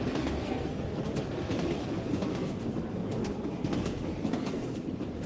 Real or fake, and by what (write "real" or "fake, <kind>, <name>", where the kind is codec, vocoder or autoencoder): fake, codec, SNAC